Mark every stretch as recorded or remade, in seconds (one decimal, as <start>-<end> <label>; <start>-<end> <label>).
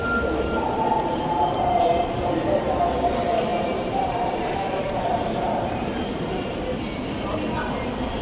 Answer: 0.0-3.5 recorded; 3.5-6.8 remade; 6.8-8.2 recorded